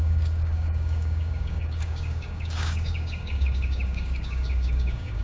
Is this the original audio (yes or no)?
no